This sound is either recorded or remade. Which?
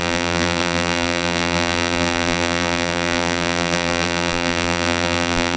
remade